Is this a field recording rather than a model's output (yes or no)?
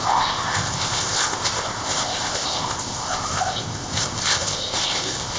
no